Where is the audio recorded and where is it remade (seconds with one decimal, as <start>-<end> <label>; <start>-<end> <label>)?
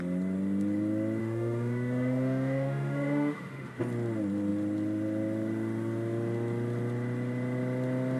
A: 0.0-1.2 recorded; 1.2-3.8 remade; 3.8-8.2 recorded